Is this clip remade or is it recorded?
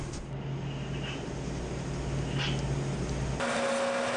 recorded